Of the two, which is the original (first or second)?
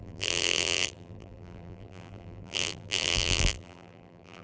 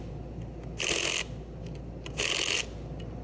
second